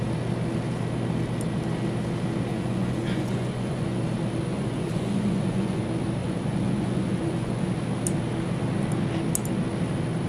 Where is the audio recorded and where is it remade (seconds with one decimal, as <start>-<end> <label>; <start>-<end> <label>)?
0.0-2.5 recorded; 2.5-4.0 remade; 4.0-4.5 recorded; 4.5-5.8 remade; 5.8-6.2 recorded; 6.2-7.7 remade; 7.7-10.3 recorded